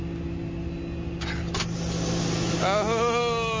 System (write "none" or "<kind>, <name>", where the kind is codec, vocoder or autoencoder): none